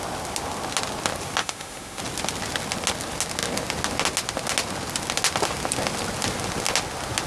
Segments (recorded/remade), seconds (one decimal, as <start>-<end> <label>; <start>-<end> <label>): 0.0-1.4 recorded; 1.4-2.0 remade; 2.0-7.3 recorded